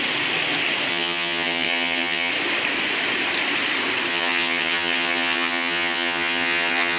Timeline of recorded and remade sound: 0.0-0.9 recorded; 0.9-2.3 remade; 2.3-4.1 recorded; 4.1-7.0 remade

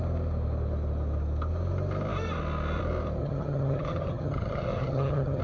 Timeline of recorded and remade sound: 0.0-3.2 recorded; 3.2-5.4 remade

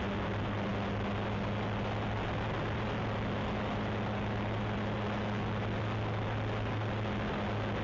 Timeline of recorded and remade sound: 0.0-7.8 recorded

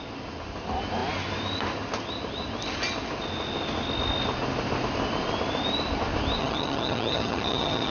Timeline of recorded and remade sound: 0.0-6.4 recorded; 6.4-7.9 remade

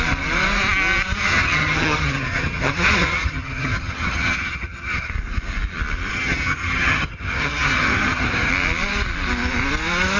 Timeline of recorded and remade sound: 0.0-1.2 recorded; 1.2-5.1 remade; 5.1-6.1 recorded; 6.1-8.5 remade; 8.5-10.2 recorded

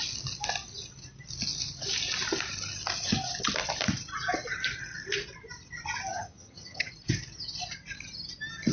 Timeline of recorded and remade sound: 0.0-6.1 recorded; 6.1-6.9 remade; 6.9-8.7 recorded